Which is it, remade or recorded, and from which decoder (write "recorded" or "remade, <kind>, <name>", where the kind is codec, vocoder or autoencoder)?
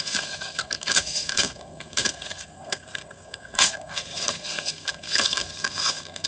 remade, codec, SNAC